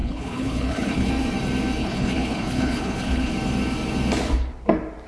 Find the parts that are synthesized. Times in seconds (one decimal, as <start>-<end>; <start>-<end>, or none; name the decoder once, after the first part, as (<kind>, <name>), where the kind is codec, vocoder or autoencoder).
0.0-1.1 (codec, HILCodec); 1.8-3.3